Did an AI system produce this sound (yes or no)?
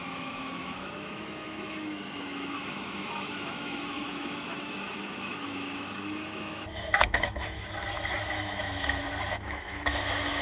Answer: yes